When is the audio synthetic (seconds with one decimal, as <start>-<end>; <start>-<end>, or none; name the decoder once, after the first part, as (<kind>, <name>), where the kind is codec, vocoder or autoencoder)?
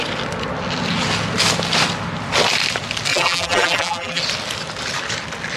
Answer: 3.1-4.2 (vocoder, BigVGAN v2)